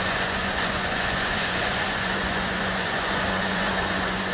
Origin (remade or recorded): remade